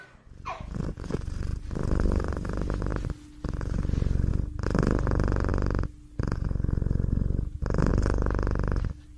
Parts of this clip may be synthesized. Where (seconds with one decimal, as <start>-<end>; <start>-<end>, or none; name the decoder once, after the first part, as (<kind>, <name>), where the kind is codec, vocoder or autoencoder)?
none